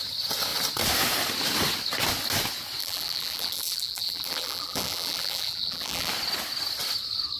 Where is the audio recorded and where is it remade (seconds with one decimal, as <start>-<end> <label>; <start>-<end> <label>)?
0.0-2.8 recorded; 2.8-6.1 remade; 6.1-7.4 recorded